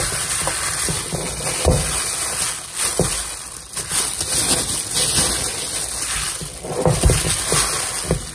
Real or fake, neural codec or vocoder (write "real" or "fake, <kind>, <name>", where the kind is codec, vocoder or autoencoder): real